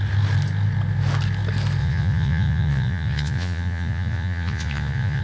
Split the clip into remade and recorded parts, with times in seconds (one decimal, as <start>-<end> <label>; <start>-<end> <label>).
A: 0.0-1.8 recorded; 1.8-5.2 remade